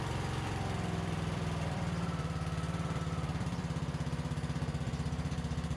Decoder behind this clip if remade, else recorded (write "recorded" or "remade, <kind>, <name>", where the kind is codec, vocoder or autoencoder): remade, vocoder, BigVGAN v2